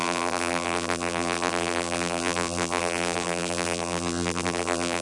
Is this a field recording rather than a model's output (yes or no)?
no